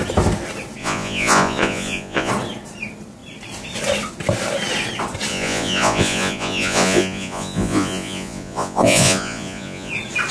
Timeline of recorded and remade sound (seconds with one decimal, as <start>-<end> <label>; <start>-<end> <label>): 0.0-0.8 recorded; 0.8-2.3 remade; 2.3-5.3 recorded; 5.3-9.9 remade; 9.9-10.3 recorded